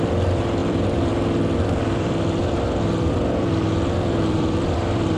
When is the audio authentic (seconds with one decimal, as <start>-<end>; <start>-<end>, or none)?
none